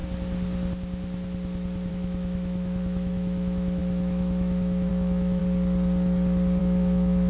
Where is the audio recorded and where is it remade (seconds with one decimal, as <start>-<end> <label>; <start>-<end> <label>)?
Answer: 0.0-1.9 recorded; 1.9-5.4 remade; 5.4-6.6 recorded; 6.6-7.3 remade